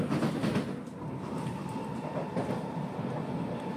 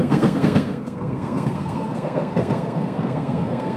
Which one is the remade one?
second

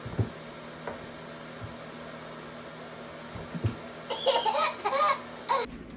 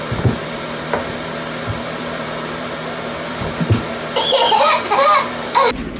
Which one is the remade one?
second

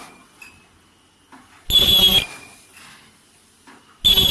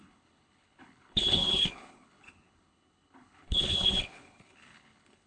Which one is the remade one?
second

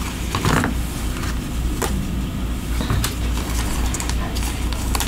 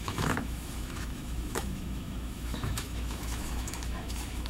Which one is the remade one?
second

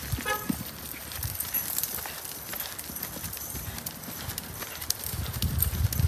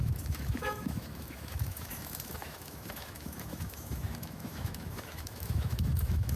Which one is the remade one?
second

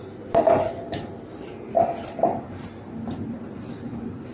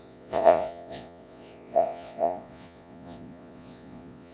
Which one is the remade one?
second